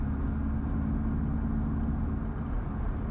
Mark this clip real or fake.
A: real